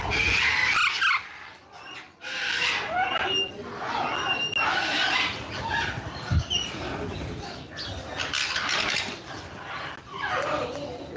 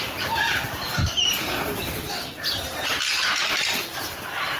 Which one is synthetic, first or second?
second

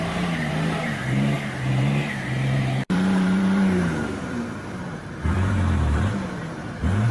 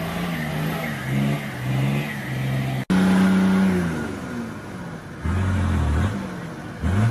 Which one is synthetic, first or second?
first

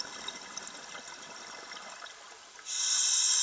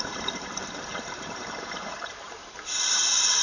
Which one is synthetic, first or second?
second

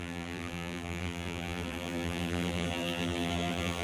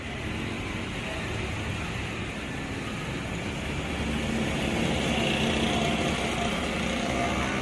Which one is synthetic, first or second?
first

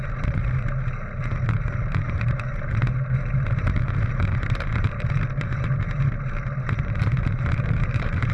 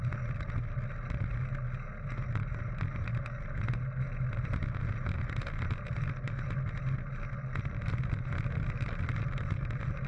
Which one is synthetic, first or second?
first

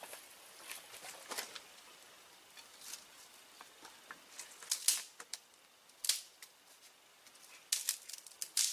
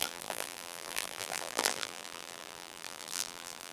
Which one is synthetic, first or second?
second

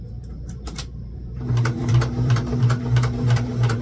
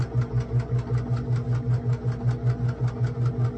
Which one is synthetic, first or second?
first